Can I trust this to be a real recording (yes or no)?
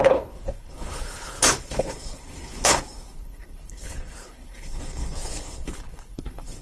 no